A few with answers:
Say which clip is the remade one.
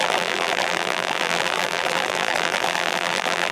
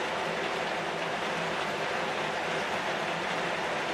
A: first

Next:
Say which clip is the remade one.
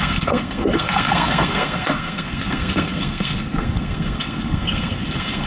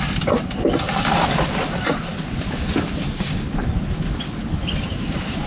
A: first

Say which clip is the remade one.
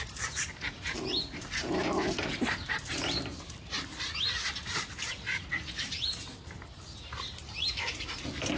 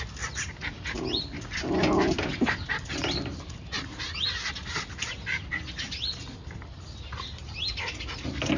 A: first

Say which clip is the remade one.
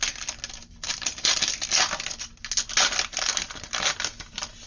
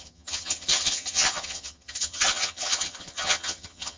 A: second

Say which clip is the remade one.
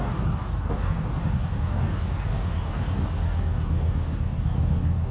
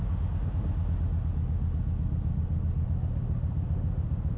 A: first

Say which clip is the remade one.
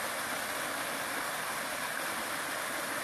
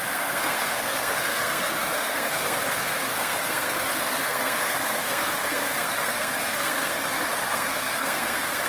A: second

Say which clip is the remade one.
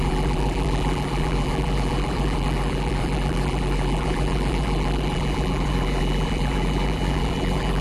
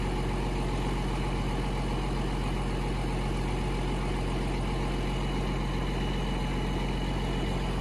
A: first